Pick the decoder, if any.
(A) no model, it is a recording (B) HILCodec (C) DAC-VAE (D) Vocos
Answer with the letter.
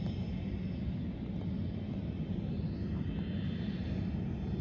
A